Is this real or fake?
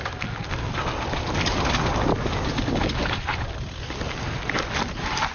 real